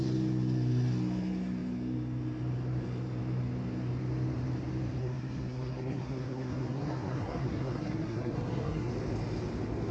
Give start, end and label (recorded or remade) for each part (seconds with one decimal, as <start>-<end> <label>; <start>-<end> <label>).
0.0-5.0 recorded; 5.0-8.9 remade; 8.9-9.9 recorded